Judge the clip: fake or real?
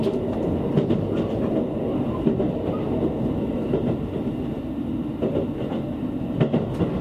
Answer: real